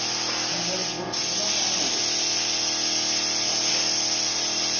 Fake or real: real